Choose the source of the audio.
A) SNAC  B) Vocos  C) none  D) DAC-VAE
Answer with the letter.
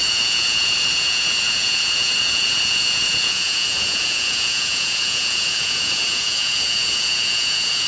B